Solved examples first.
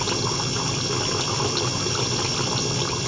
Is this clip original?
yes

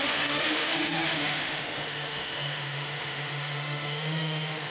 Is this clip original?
no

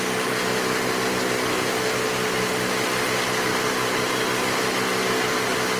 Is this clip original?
yes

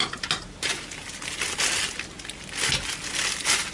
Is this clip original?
yes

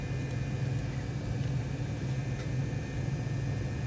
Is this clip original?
yes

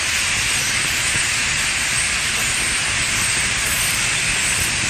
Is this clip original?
yes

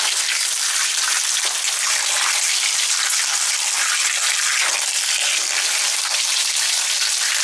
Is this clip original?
yes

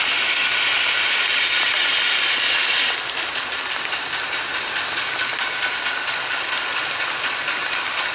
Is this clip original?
yes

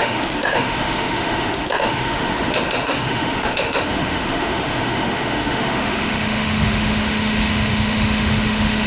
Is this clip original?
no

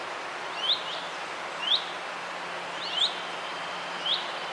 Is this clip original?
yes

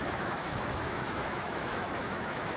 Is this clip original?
no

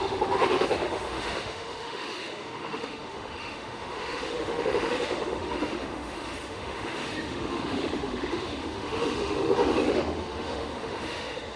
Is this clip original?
no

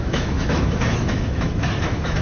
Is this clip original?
no